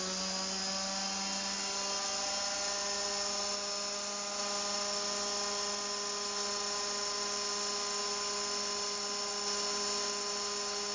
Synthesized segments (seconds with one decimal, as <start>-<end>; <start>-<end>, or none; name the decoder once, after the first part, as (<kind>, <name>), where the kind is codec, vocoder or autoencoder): none